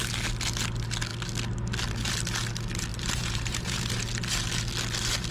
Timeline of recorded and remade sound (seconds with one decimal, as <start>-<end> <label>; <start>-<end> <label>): 0.0-2.9 recorded; 2.9-4.0 remade; 4.0-5.3 recorded